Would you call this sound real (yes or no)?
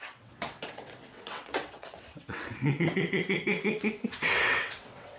no